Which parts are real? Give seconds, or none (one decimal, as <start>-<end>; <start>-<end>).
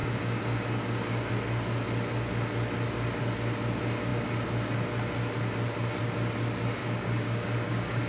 1.3-6.8